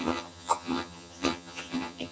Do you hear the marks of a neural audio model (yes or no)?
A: yes